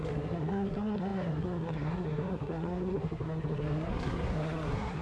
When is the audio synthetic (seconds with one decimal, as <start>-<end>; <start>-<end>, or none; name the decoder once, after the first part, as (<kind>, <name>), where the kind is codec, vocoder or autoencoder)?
0.0-5.0 (codec, SNAC)